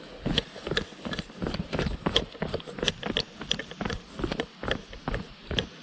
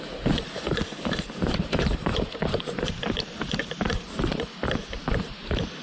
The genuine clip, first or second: first